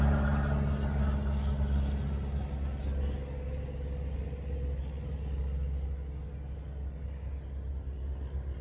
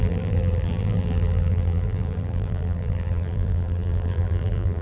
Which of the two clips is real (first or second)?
first